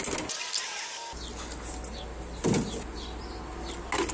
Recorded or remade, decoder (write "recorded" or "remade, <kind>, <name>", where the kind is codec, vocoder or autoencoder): recorded